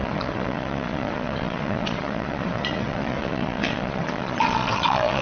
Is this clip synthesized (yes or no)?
yes